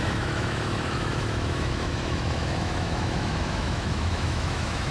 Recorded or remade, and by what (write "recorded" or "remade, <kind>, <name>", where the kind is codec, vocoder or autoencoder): remade, autoencoder, DAC-VAE